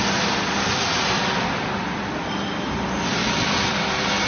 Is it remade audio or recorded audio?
recorded